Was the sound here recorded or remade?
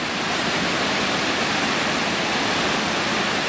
recorded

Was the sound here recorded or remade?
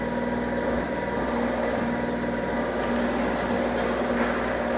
recorded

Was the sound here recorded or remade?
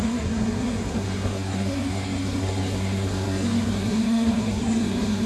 remade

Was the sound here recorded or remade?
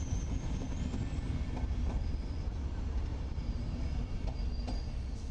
recorded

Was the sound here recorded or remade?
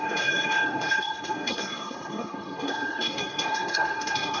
remade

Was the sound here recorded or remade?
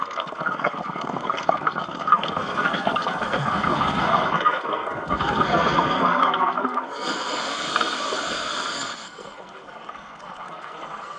remade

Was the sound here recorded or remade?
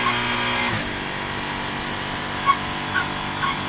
recorded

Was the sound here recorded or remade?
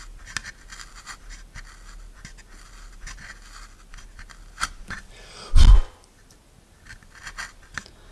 recorded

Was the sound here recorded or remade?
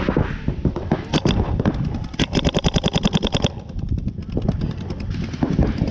recorded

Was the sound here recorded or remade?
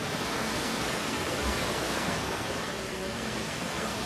remade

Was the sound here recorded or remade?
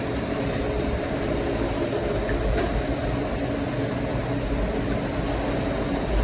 recorded